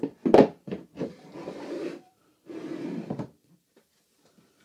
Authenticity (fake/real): fake